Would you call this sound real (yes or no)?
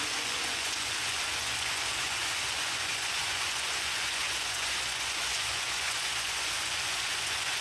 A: no